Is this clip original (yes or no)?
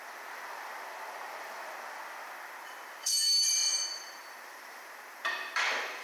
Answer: no